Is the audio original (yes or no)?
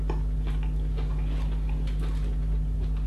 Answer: yes